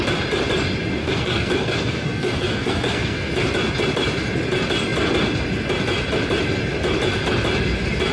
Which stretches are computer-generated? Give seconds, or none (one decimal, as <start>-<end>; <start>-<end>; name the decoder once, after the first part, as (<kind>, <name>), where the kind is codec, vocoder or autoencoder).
1.0-3.3 (codec, SNAC)